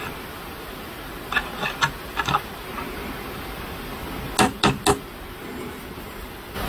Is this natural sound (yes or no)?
yes